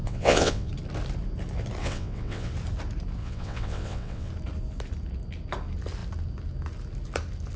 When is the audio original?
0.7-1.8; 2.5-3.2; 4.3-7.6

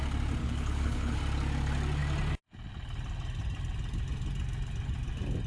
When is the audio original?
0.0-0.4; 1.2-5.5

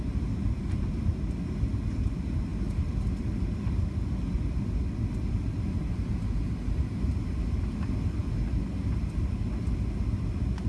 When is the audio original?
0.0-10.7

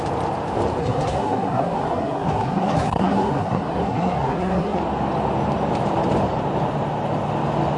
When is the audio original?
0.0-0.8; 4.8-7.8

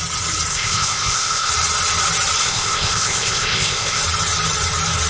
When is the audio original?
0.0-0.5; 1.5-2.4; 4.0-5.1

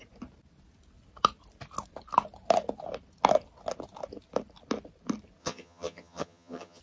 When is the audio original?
0.0-5.4

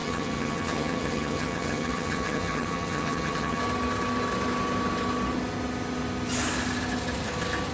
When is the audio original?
3.6-7.7

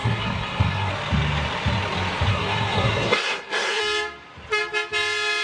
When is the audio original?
0.9-2.3; 3.8-5.4